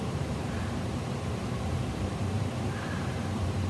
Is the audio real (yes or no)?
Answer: no